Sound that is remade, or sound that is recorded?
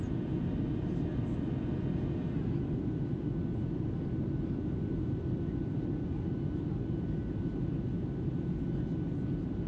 recorded